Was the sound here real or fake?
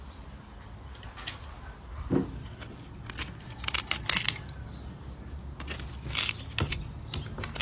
real